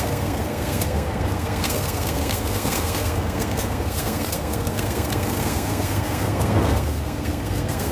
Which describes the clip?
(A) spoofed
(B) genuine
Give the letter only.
A